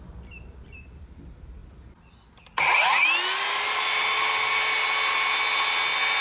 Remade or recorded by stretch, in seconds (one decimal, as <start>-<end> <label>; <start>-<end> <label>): 0.0-6.2 recorded